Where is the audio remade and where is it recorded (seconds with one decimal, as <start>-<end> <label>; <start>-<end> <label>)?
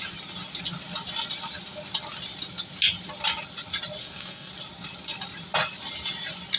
0.0-4.0 recorded; 4.0-4.5 remade; 4.5-6.6 recorded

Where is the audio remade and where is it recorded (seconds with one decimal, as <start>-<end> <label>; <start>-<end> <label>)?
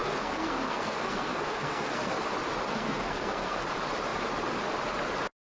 0.0-2.2 remade; 2.2-2.7 recorded; 2.7-3.6 remade; 3.6-5.6 recorded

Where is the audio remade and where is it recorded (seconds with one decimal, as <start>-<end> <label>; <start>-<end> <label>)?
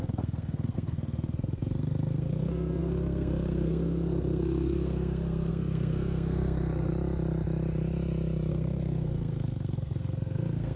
0.0-6.9 remade; 6.9-8.5 recorded; 8.5-10.8 remade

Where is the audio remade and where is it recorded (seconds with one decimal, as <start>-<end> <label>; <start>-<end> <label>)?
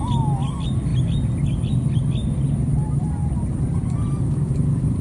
0.0-5.0 recorded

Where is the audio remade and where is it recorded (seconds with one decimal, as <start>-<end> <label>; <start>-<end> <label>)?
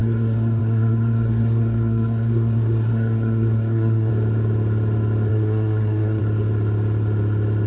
0.0-4.1 remade; 4.1-5.3 recorded; 5.3-6.2 remade; 6.2-7.7 recorded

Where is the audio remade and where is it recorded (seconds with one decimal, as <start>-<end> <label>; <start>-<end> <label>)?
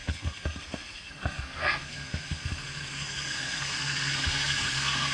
0.0-5.1 remade